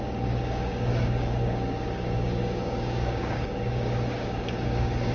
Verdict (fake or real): fake